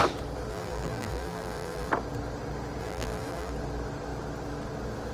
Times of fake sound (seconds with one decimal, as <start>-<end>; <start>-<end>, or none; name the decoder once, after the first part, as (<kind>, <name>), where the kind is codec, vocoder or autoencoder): 0.5-1.9 (vocoder, BigVGAN v2); 2.8-3.5